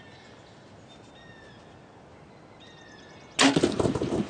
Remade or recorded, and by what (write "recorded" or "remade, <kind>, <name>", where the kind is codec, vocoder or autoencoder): recorded